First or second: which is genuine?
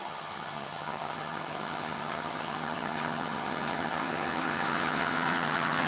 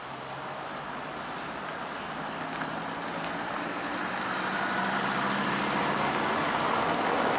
second